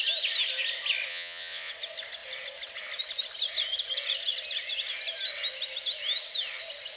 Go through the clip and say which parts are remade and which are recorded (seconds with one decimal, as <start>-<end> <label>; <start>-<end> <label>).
0.0-1.1 recorded; 1.1-1.7 remade; 1.7-7.0 recorded

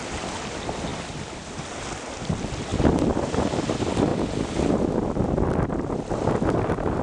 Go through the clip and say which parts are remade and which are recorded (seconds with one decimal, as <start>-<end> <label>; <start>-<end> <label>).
0.0-7.0 recorded

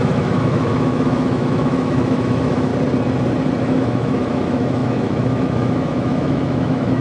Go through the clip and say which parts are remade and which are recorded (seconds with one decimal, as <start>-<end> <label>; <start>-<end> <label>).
0.0-2.7 remade; 2.7-3.6 recorded; 3.6-7.0 remade

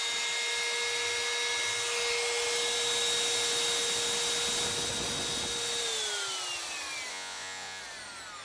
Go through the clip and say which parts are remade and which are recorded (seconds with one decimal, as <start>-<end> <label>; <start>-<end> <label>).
0.0-7.1 recorded; 7.1-7.8 remade; 7.8-8.4 recorded

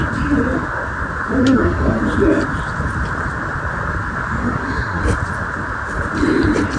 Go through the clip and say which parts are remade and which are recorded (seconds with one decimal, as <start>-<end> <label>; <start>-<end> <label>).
0.0-1.4 recorded; 1.4-2.0 remade; 2.0-4.4 recorded; 4.4-5.0 remade; 5.0-6.8 recorded

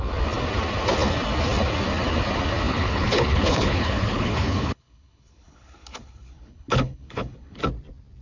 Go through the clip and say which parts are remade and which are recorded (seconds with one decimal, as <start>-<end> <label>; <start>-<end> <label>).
0.0-2.7 recorded; 2.7-7.6 remade; 7.6-8.2 recorded

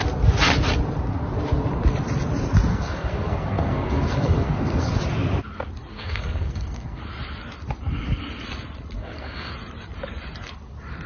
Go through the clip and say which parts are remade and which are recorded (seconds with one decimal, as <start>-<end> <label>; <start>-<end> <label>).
0.0-2.7 recorded; 2.7-4.9 remade; 4.9-5.9 recorded; 5.9-7.0 remade; 7.0-9.0 recorded; 9.0-9.5 remade; 9.5-11.1 recorded

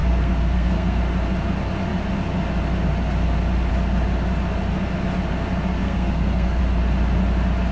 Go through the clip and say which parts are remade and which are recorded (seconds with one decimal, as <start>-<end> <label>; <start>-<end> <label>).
0.0-1.0 remade; 1.0-5.8 recorded; 5.8-6.6 remade; 6.6-7.7 recorded